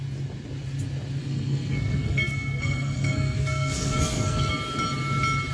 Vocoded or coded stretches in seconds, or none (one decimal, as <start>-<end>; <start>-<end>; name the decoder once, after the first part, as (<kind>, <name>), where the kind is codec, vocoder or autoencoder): 1.2-4.5 (codec, SNAC)